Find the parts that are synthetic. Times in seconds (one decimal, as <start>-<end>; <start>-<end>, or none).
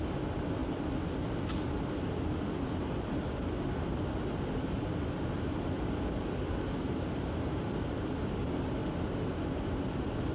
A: none